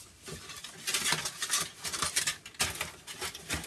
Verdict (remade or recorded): recorded